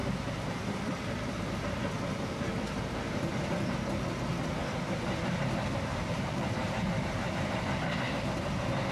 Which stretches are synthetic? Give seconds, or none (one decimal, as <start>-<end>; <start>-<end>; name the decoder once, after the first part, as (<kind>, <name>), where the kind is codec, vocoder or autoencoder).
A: 5.9-7.2 (vocoder, BigVGAN v2)